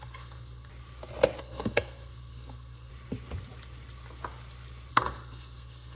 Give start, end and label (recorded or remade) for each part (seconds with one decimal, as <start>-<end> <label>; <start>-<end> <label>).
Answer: 0.0-0.7 remade; 0.7-1.4 recorded; 1.4-2.9 remade; 2.9-4.9 recorded; 4.9-5.9 remade